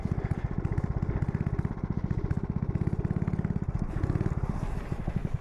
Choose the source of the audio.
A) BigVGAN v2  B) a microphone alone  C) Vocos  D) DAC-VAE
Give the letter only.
B